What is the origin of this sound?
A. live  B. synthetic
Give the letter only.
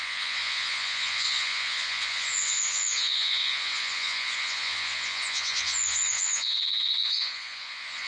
B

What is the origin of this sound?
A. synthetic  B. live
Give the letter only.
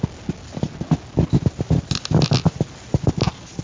B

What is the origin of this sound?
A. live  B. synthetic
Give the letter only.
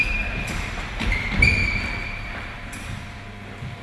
B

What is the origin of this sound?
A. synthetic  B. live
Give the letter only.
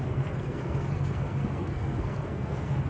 A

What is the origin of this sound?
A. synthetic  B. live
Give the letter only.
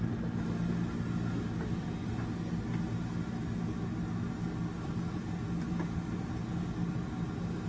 B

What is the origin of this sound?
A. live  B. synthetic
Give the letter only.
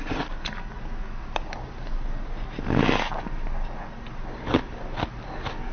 A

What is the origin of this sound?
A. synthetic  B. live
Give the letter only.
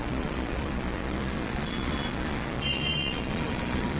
A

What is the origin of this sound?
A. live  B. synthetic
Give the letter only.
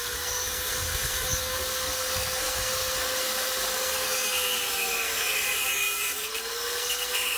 B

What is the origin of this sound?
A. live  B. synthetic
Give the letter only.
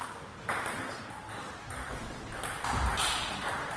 A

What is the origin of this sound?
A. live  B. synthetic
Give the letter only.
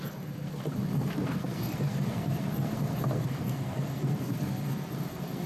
B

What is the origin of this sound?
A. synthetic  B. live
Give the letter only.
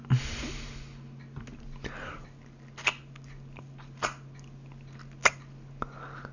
B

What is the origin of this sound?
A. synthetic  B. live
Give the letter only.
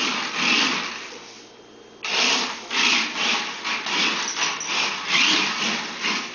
B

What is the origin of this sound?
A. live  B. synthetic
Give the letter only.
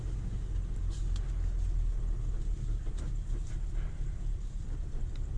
A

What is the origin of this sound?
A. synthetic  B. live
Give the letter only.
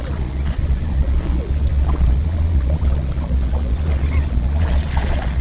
A